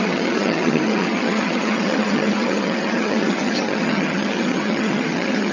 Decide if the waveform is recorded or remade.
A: remade